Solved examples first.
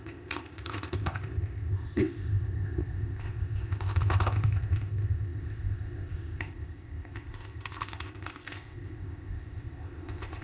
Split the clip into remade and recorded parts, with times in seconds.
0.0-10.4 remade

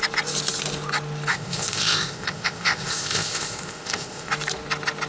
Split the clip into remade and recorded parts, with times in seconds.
0.0-1.3 recorded; 1.3-4.3 remade; 4.3-5.1 recorded

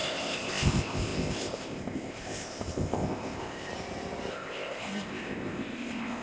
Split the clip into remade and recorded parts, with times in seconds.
0.0-3.7 remade; 3.7-4.3 recorded; 4.3-6.2 remade

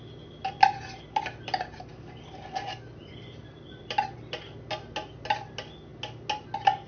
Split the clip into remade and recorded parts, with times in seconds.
0.0-6.9 recorded

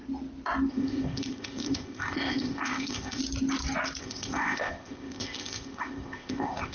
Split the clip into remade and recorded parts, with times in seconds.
0.0-0.7 recorded; 0.7-3.2 remade; 3.2-4.0 recorded; 4.0-6.7 remade

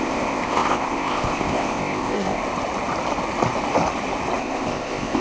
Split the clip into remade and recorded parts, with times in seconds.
0.0-2.4 remade; 2.4-4.4 recorded; 4.4-5.2 remade

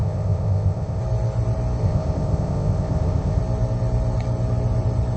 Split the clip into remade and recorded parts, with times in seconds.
0.0-1.0 remade; 1.0-1.8 recorded; 1.8-3.4 remade; 3.4-5.2 recorded